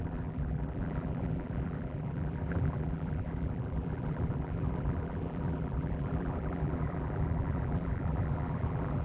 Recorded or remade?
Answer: remade